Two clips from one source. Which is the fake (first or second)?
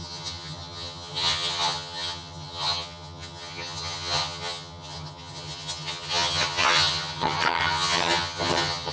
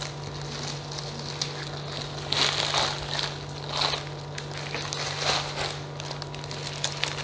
first